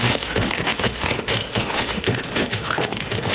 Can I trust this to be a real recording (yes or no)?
no